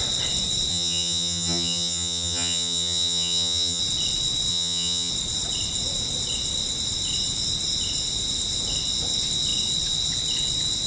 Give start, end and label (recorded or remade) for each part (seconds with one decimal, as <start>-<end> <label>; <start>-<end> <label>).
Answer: 0.0-0.7 recorded; 0.7-3.8 remade; 3.8-4.5 recorded; 4.5-5.1 remade; 5.1-10.9 recorded

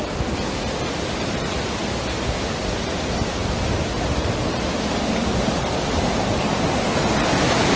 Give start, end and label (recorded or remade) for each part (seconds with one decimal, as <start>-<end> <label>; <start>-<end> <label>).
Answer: 0.0-7.8 recorded